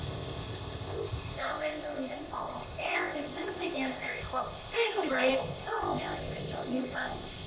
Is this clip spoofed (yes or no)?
yes